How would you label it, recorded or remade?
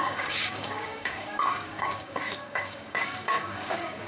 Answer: remade